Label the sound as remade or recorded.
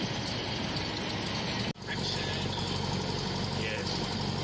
recorded